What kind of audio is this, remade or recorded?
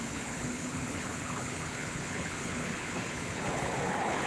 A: remade